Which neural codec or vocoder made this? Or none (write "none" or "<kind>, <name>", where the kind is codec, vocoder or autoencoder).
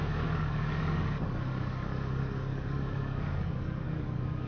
codec, DAC